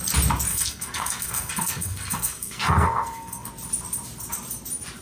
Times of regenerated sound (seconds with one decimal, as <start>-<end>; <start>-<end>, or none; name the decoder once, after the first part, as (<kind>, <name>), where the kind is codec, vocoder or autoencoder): 0.5-3.5 (codec, SNAC)